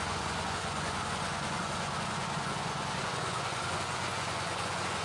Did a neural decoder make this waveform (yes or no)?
yes